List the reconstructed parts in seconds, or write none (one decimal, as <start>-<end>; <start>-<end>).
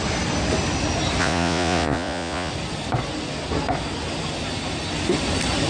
1.2-2.5